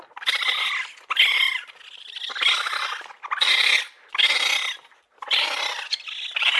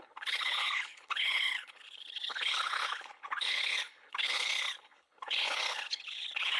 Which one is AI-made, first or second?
second